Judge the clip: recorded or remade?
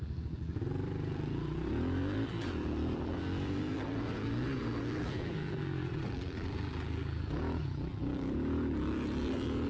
remade